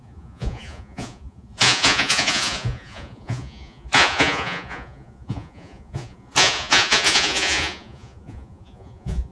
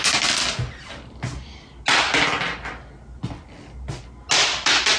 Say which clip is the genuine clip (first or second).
second